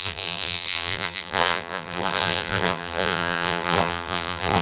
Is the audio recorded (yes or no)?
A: no